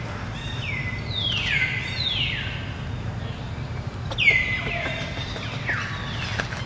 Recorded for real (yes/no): yes